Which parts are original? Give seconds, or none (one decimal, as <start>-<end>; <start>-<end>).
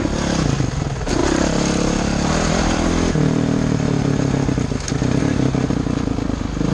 0.0-6.7